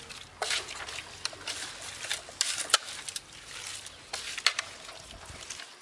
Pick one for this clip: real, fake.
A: real